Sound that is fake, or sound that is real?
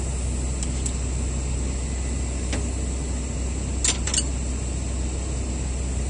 real